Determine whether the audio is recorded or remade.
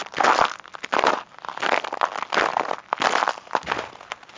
remade